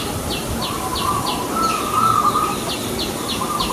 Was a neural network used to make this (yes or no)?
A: no